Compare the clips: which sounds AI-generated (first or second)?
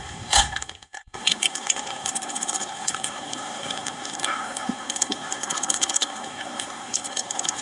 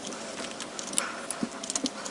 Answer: first